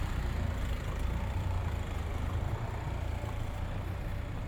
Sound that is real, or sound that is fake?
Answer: fake